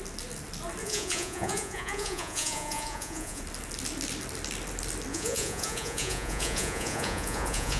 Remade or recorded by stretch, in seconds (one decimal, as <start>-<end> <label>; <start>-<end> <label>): 0.0-0.8 recorded; 0.8-3.4 remade; 3.4-5.1 recorded; 5.1-7.8 remade